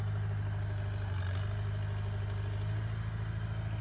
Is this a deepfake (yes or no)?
no